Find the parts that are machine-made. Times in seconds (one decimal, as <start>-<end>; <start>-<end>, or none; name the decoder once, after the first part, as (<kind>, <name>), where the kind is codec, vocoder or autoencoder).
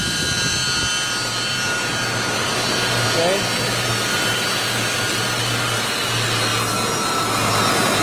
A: none